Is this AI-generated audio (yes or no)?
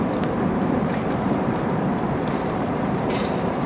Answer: yes